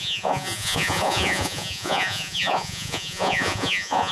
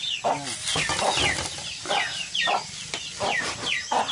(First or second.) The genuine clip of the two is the second